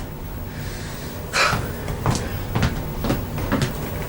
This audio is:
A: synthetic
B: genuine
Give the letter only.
B